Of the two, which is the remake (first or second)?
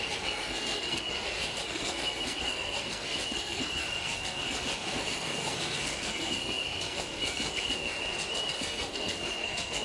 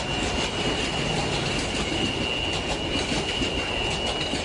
first